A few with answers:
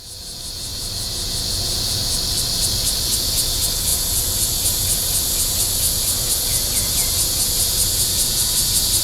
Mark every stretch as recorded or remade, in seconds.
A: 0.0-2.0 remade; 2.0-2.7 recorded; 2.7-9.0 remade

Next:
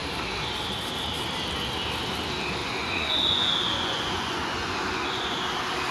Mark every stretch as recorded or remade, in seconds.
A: 0.0-2.6 recorded; 2.6-5.4 remade; 5.4-5.9 recorded

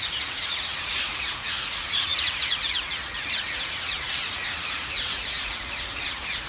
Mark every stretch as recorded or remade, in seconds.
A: 0.0-6.5 remade

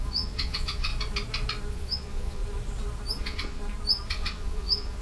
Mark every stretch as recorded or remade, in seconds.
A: 0.0-0.9 remade; 0.9-1.7 recorded; 1.7-2.4 remade; 2.4-3.2 recorded; 3.2-3.6 remade; 3.6-4.1 recorded; 4.1-5.0 remade